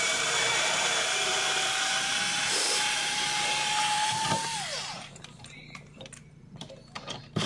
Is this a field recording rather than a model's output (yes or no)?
no